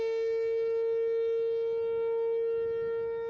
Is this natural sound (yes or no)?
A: yes